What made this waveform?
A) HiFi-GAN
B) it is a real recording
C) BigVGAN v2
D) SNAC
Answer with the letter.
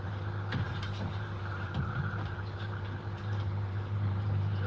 C